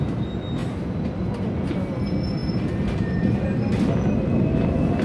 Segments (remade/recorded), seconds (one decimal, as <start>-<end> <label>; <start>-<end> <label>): 0.0-2.4 recorded; 2.4-3.4 remade; 3.4-5.0 recorded